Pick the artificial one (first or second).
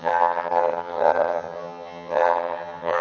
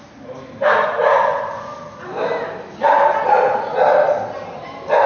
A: first